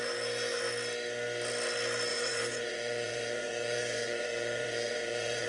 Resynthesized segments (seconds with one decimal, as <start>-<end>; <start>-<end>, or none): 2.1-5.5